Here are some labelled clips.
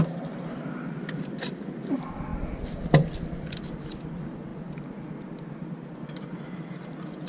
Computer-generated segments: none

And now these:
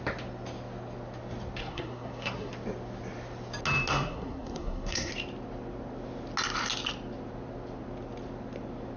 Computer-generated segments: 1.6-2.5; 3.9-5.1

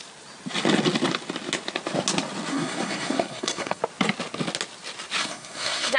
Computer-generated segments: 2.5-3.8; 5.2-6.0

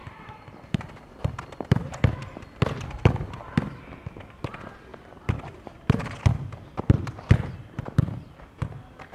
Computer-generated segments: 0.0-3.7; 4.9-7.7